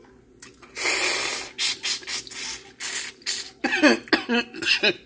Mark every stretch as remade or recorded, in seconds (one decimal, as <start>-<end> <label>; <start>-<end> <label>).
0.0-5.1 recorded